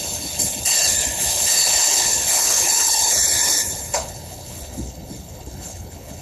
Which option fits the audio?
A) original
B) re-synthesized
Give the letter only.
B